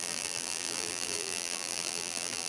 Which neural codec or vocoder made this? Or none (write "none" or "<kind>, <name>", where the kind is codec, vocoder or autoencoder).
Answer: vocoder, BigVGAN v2